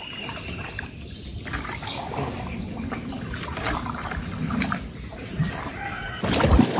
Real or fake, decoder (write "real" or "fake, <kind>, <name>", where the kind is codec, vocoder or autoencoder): real